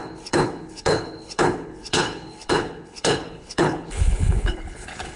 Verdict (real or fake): fake